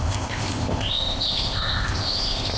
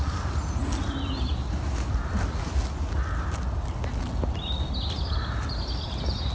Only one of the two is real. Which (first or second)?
second